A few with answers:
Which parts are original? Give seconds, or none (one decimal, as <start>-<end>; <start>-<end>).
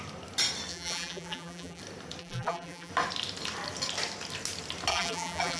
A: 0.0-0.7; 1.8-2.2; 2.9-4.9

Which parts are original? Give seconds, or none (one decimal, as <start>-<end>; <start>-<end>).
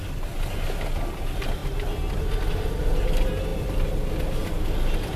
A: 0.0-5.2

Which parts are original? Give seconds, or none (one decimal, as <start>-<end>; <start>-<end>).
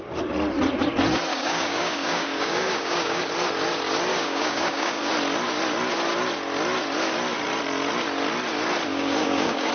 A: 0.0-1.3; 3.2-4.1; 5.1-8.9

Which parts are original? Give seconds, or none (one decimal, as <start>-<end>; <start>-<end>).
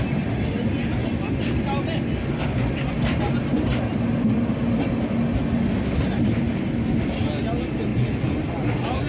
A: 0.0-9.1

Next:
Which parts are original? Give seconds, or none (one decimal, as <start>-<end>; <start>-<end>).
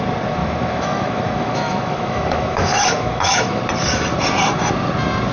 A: 0.0-0.4; 3.6-5.3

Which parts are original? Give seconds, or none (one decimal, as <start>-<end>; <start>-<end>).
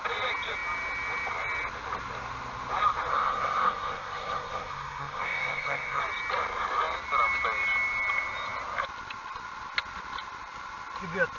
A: 0.0-3.1; 6.0-11.4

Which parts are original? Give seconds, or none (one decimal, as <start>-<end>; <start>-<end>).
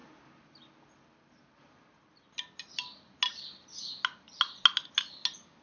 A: 0.0-5.6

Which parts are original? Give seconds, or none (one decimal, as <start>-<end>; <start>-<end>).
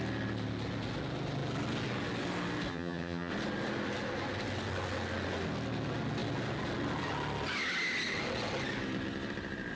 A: 0.0-2.7; 3.3-9.8